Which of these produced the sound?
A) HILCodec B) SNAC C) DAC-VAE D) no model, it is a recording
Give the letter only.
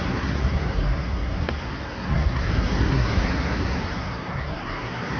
B